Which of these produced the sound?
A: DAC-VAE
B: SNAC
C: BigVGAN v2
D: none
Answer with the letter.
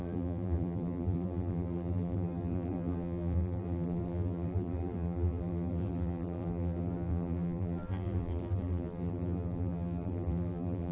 C